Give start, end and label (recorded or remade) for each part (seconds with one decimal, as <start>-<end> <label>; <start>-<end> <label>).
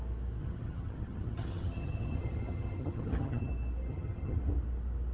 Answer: 0.0-0.4 recorded; 0.4-3.5 remade; 3.5-3.9 recorded; 3.9-4.4 remade; 4.4-5.1 recorded